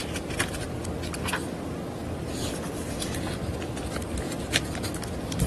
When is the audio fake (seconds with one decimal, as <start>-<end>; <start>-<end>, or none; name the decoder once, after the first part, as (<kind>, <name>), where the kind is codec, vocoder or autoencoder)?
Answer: none